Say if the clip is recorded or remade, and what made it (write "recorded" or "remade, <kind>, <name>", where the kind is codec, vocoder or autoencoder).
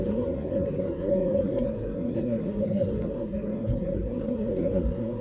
remade, codec, SNAC